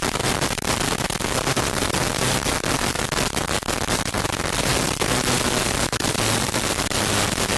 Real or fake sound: real